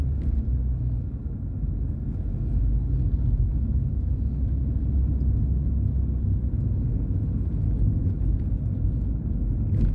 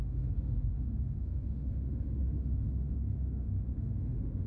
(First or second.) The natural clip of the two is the first